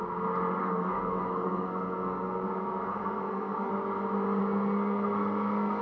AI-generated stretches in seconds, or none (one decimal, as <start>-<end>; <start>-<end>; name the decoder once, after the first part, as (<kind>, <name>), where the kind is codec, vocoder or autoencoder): 0.6-3.7 (codec, SNAC); 4.4-5.8